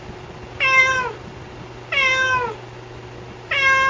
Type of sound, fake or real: real